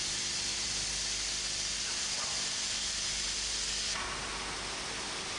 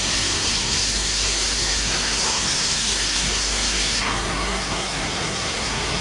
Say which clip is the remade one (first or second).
second